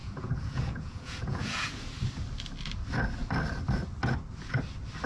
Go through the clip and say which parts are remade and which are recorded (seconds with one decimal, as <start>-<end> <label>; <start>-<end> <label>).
0.0-1.8 remade; 1.8-5.1 recorded